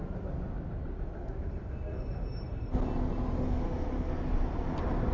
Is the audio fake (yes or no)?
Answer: no